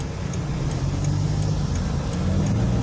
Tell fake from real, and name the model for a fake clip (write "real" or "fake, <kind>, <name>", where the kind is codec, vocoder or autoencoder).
real